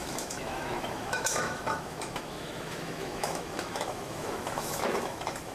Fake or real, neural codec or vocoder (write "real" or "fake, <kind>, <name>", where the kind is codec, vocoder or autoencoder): fake, autoencoder, DAC-VAE